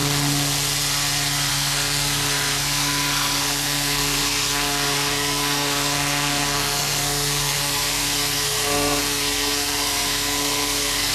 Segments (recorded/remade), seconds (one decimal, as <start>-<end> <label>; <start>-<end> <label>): 0.0-1.5 recorded; 1.5-11.1 remade